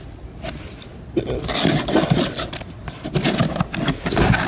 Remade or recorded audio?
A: recorded